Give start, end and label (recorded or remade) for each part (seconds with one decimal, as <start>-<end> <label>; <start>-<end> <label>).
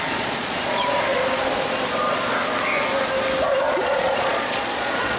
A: 0.0-1.2 remade; 1.2-3.7 recorded; 3.7-5.2 remade